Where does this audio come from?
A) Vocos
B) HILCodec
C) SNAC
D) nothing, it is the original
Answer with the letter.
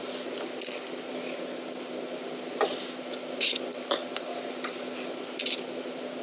D